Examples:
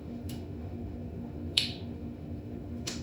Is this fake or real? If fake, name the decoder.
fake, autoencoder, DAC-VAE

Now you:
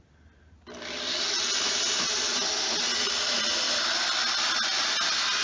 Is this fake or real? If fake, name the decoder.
real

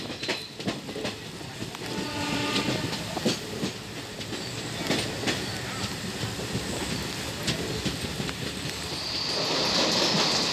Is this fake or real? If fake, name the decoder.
real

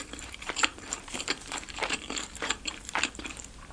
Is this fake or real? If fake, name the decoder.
fake, vocoder, BigVGAN v2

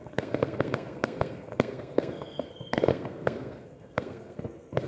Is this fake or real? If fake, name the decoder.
fake, codec, SNAC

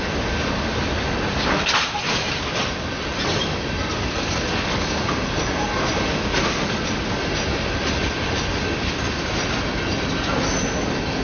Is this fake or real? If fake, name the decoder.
real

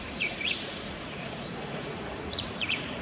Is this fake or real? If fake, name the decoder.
fake, vocoder, Vocos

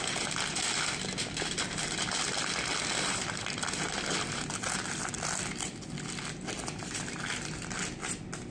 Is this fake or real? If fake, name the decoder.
real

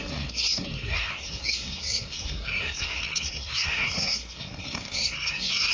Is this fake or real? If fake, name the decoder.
fake, codec, SNAC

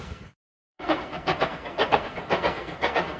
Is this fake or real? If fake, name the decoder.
fake, codec, SNAC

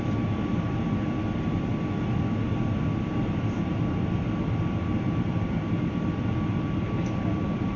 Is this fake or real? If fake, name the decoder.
real